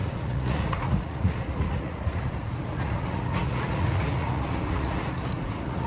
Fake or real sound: fake